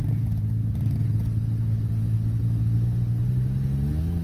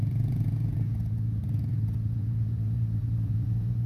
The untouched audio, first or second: first